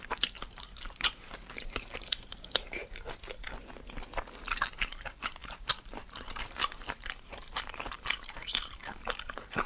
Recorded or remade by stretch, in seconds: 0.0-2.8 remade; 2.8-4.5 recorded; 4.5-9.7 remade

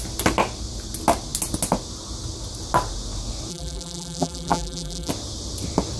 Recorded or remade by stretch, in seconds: 0.0-3.5 recorded; 3.5-5.1 remade; 5.1-6.0 recorded

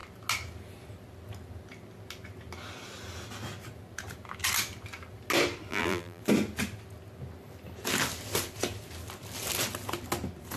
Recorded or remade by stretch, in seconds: 0.0-5.7 recorded; 5.7-6.2 remade; 6.2-10.6 recorded

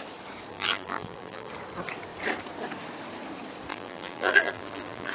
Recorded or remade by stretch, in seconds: 0.0-0.5 recorded; 0.5-1.5 remade; 1.5-3.7 recorded; 3.7-5.1 remade

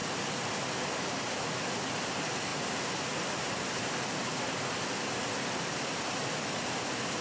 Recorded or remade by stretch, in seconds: 0.0-2.5 recorded; 2.5-3.9 remade; 3.9-4.3 recorded; 4.3-4.8 remade; 4.8-7.2 recorded

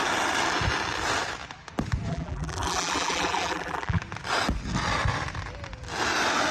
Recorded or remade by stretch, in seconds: 0.0-2.1 recorded; 2.1-4.0 remade; 4.0-6.5 recorded